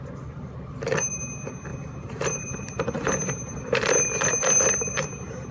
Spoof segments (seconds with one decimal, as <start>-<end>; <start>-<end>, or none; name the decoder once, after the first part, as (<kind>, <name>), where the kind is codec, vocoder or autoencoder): 1.7-5.0 (vocoder, BigVGAN v2)

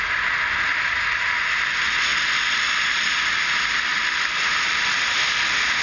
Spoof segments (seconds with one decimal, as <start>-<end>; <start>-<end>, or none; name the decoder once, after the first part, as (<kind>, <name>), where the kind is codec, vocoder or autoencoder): none

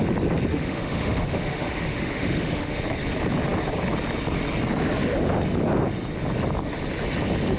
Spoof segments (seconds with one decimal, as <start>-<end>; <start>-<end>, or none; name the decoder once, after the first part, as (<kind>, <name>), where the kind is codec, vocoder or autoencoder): 0.5-2.8 (autoencoder, DAC-VAE)

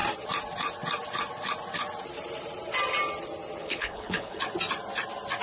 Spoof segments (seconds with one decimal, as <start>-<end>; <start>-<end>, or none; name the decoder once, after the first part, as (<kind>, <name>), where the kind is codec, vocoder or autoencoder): 3.6-4.4 (codec, HILCodec)

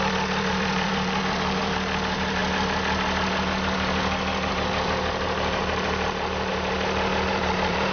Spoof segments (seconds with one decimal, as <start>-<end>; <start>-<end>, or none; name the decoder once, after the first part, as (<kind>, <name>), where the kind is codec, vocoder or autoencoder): 0.0-2.4 (vocoder, BigVGAN v2); 4.5-6.5; 7.3-7.9

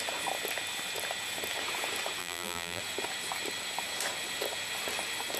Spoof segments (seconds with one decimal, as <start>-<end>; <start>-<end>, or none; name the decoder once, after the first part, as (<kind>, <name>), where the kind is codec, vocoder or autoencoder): 2.2-2.8 (vocoder, BigVGAN v2)

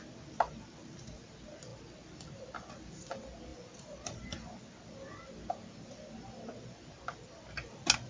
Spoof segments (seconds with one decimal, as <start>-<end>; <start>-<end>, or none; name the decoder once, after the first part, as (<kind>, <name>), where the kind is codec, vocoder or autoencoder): none

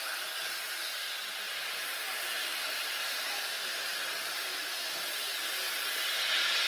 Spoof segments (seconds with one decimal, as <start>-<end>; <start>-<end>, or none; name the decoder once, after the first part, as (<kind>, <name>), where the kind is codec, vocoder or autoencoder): none